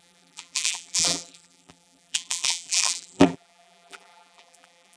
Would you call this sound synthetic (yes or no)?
yes